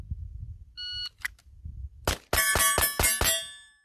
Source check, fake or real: real